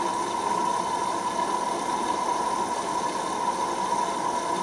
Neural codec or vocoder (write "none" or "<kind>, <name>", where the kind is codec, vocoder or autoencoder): none